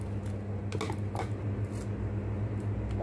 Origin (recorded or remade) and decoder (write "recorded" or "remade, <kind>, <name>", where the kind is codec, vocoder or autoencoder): recorded